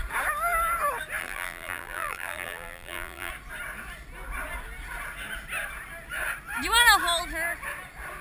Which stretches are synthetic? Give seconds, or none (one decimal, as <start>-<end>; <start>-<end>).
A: 1.2-3.3

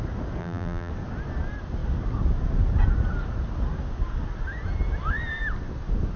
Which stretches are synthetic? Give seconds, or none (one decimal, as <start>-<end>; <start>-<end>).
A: 0.4-0.9

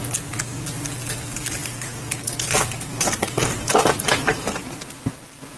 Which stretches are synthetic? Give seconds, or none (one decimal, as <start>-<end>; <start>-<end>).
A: 1.6-4.8

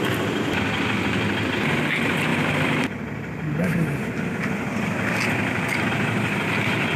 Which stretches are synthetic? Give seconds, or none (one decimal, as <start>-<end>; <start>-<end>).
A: none

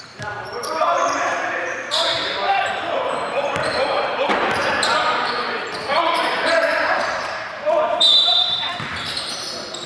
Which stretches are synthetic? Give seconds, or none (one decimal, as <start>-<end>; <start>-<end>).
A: 0.0-9.9

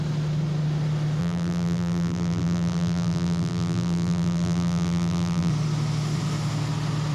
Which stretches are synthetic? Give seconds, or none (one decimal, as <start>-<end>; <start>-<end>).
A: 1.2-5.5